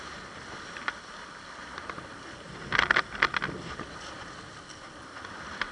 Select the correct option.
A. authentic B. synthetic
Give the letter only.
A